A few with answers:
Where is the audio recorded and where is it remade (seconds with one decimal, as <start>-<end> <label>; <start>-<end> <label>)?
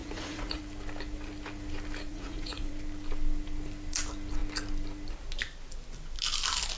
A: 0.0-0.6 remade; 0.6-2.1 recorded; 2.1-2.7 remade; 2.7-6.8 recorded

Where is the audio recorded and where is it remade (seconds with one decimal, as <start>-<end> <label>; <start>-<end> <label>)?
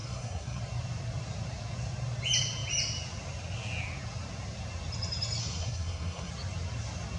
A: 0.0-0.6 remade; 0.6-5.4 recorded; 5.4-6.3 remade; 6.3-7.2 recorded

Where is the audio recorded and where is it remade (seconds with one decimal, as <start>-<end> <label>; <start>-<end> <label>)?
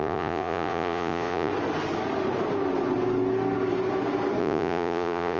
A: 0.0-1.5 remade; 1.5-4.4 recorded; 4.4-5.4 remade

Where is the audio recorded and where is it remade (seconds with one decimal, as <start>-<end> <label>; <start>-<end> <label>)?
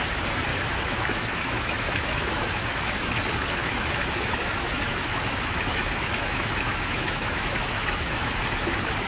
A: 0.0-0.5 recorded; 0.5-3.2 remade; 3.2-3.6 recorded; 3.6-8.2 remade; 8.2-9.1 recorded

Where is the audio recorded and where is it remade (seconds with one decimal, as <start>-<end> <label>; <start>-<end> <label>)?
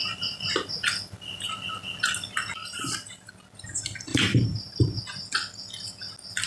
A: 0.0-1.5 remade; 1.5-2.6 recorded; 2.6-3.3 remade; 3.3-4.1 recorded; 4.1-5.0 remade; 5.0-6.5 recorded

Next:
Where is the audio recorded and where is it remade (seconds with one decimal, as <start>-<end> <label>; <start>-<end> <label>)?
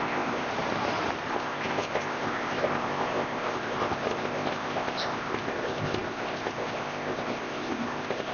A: 0.0-0.5 remade; 0.5-1.3 recorded; 1.3-8.3 remade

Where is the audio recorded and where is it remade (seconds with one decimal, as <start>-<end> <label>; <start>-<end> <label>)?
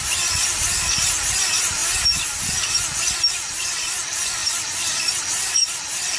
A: 0.0-4.4 recorded; 4.4-5.2 remade; 5.2-6.2 recorded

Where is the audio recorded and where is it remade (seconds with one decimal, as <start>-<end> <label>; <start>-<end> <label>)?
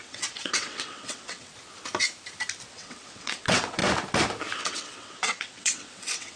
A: 0.0-1.5 remade; 1.5-2.7 recorded; 2.7-3.8 remade; 3.8-4.6 recorded; 4.6-6.4 remade